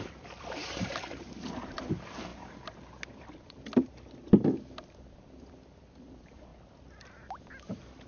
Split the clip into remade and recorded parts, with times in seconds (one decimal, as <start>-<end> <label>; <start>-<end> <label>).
0.0-2.3 remade; 2.3-3.1 recorded; 3.1-6.5 remade; 6.5-8.1 recorded